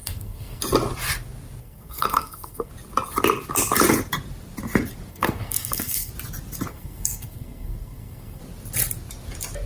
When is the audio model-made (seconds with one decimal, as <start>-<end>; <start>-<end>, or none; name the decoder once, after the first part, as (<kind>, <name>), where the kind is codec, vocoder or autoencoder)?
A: 0.0-0.6 (codec, SNAC); 1.6-2.7; 5.1-6.1; 6.7-8.4